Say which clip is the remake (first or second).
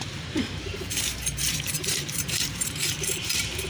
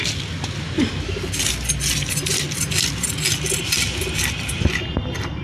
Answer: first